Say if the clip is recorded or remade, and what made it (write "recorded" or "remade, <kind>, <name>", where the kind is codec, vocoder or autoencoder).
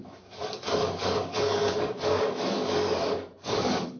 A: remade, codec, DAC